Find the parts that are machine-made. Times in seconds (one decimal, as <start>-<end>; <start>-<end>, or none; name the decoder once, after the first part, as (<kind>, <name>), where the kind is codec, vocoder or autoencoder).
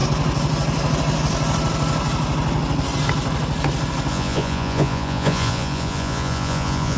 4.1-7.0 (vocoder, Vocos)